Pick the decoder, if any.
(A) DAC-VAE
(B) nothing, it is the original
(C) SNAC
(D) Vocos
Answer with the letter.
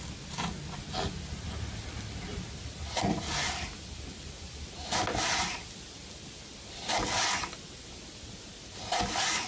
B